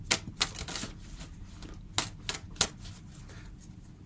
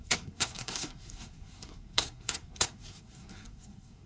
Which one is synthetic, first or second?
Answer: second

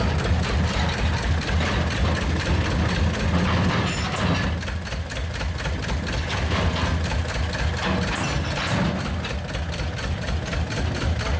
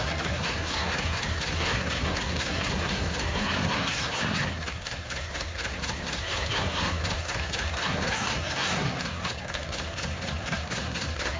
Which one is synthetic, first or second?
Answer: second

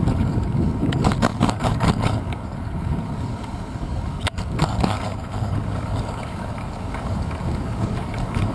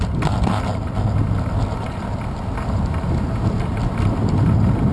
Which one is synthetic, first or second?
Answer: first